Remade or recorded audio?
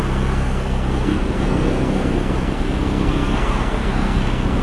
remade